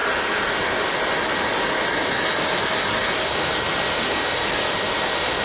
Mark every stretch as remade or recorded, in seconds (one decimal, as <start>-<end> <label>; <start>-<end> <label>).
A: 0.0-5.4 recorded